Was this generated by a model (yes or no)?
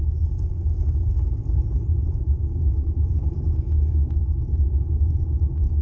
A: no